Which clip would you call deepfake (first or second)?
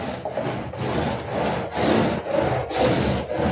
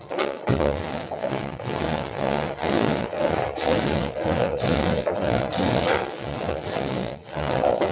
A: second